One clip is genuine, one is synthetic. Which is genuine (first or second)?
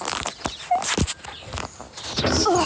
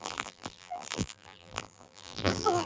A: first